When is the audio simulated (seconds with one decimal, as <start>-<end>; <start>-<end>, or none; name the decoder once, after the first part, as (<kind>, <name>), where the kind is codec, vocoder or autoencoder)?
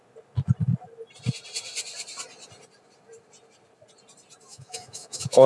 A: 4.5-5.5 (autoencoder, DAC-VAE)